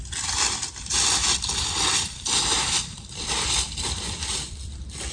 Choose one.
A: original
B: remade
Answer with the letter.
B